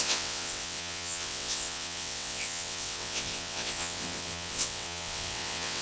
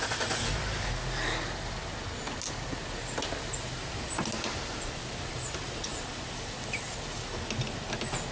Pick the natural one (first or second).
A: second